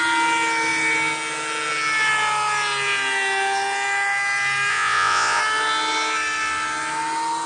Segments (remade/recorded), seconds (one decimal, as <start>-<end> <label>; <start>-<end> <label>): 0.0-4.7 recorded; 4.7-5.4 remade; 5.4-7.5 recorded